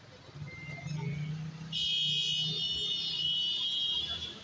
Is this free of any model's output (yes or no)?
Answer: yes